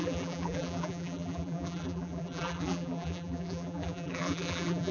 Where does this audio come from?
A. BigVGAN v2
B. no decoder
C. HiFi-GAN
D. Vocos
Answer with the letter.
A